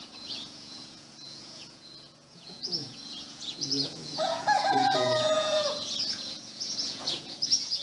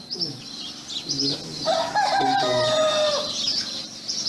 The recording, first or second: second